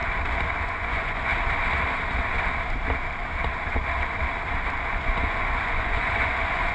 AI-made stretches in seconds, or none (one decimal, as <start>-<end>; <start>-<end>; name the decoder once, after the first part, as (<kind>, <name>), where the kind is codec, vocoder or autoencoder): 0.6-1.3 (vocoder, Vocos); 4.8-6.7